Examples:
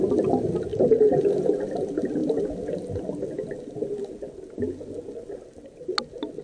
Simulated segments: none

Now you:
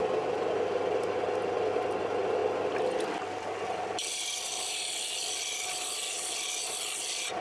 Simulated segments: none